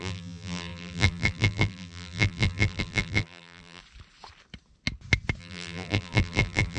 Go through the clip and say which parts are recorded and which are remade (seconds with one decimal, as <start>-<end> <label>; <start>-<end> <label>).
0.0-3.8 remade; 3.8-5.4 recorded; 5.4-6.8 remade